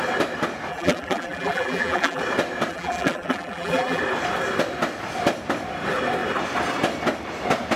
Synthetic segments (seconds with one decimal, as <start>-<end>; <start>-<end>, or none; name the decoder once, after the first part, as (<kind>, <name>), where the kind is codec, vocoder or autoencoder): 0.7-2.2 (vocoder, BigVGAN v2); 2.7-4.0